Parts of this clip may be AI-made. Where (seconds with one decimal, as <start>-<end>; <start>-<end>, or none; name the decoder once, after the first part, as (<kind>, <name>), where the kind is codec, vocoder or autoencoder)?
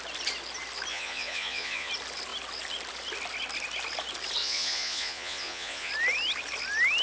0.9-1.9 (vocoder, Vocos); 4.4-5.9